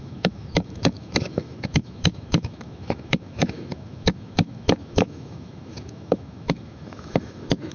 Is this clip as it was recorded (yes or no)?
no